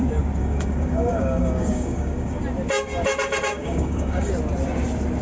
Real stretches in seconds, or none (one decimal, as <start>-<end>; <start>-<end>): 0.0-0.4; 2.4-3.5; 4.3-5.2